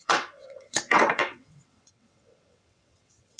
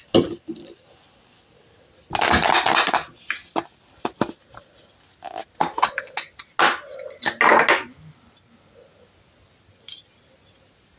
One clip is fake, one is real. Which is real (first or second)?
second